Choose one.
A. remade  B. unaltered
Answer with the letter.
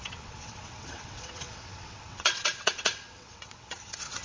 A